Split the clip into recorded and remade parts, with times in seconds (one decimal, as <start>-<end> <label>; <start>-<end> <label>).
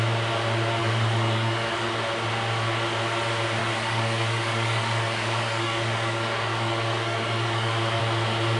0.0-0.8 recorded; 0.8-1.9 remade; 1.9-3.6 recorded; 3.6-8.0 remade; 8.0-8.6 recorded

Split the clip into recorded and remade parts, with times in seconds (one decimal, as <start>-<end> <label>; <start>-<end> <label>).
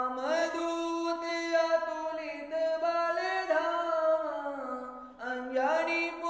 0.0-0.4 recorded; 0.4-1.3 remade; 1.3-6.3 recorded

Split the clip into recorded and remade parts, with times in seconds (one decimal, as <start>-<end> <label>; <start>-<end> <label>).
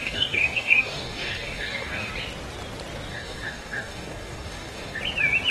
0.0-2.1 remade; 2.1-3.1 recorded; 3.1-5.0 remade; 5.0-5.5 recorded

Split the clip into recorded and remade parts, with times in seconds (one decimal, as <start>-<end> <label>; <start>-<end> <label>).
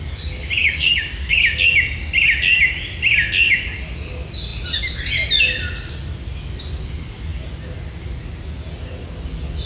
0.0-0.6 recorded; 0.6-1.4 remade; 1.4-9.7 recorded